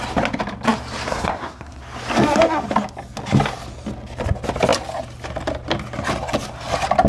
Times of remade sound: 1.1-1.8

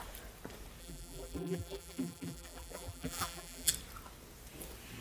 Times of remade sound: 0.8-3.7

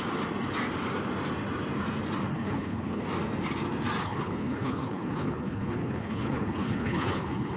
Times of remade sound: 2.3-3.0; 4.0-7.6